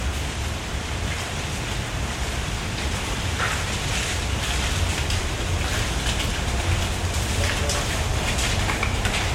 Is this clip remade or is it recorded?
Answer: recorded